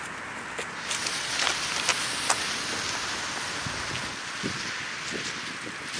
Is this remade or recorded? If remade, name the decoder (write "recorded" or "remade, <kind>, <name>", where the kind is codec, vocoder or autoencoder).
recorded